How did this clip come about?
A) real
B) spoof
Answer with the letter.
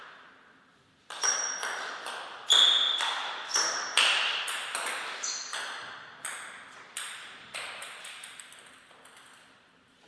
B